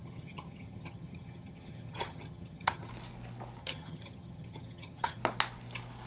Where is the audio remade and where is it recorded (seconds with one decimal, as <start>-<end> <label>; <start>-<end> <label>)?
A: 0.0-2.9 remade; 2.9-3.6 recorded; 3.6-5.2 remade; 5.2-6.1 recorded